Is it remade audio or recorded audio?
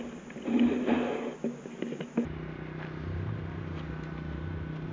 recorded